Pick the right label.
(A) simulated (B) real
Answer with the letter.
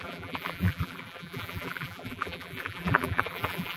A